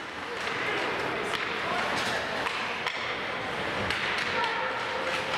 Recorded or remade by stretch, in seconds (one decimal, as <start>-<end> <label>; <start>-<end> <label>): 0.0-0.7 remade; 0.7-5.4 recorded